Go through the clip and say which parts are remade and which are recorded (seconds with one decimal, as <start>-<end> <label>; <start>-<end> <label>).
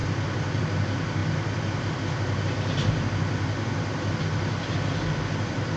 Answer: 0.0-5.8 recorded